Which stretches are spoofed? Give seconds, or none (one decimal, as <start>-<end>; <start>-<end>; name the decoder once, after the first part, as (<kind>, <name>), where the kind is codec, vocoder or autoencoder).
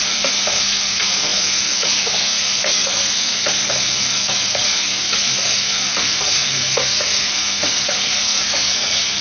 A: 0.0-9.2 (codec, SNAC)